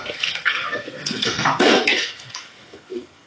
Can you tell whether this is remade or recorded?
remade